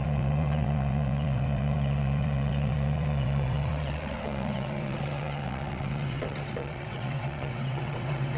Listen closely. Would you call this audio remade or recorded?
remade